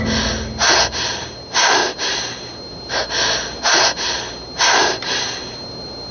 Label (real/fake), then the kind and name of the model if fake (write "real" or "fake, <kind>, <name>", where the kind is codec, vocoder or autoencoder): real